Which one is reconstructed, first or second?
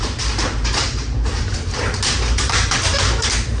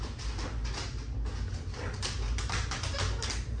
first